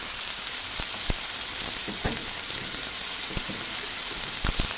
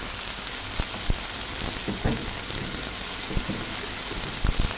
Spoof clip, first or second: first